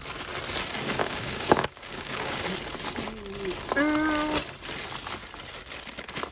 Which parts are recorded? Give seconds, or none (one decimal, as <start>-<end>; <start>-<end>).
0.0-1.0; 2.4-6.3